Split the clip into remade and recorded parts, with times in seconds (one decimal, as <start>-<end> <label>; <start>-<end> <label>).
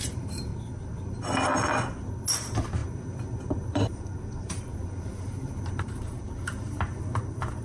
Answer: 0.0-0.5 remade; 0.5-2.4 recorded; 2.4-7.6 remade